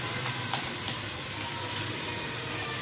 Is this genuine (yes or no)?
yes